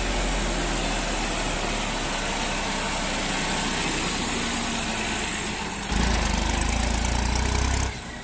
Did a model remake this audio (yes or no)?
no